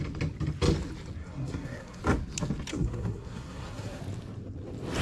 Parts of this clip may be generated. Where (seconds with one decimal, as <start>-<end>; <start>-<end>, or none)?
1.2-2.0; 2.7-4.0